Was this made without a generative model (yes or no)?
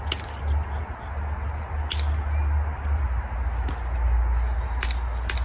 yes